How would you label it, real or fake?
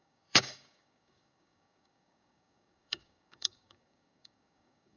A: fake